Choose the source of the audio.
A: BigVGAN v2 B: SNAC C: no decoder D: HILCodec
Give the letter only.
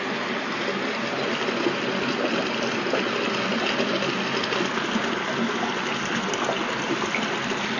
C